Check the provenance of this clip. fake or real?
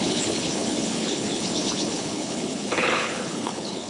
fake